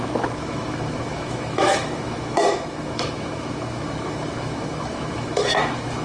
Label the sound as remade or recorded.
remade